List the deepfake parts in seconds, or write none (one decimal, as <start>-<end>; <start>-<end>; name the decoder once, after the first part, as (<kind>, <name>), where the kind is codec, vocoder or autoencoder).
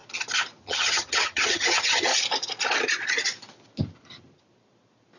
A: 0.6-2.1 (vocoder, HiFi-GAN)